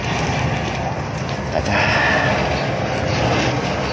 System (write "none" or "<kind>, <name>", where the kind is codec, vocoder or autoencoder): none